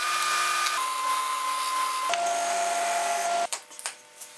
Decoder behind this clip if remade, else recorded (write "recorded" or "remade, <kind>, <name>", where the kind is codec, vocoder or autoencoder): recorded